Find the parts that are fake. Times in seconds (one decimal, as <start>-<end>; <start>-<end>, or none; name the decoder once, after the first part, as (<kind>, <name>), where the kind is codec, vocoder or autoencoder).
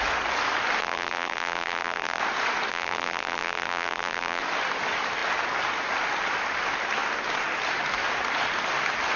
0.8-2.2 (vocoder, BigVGAN v2); 2.7-4.4